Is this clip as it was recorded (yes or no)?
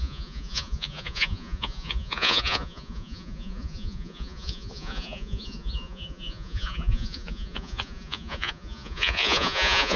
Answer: no